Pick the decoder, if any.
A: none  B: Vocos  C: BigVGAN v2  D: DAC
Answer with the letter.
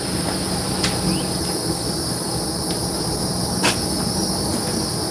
A